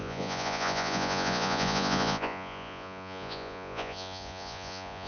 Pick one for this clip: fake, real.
fake